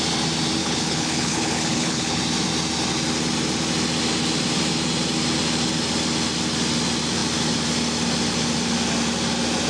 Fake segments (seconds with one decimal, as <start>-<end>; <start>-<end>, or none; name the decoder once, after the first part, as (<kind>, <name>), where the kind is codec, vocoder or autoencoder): 0.6-2.2 (codec, HILCodec)